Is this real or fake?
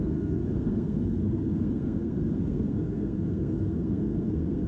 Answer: fake